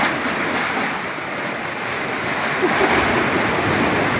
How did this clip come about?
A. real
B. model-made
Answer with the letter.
A